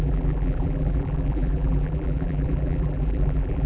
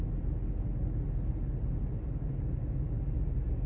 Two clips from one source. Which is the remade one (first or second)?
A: first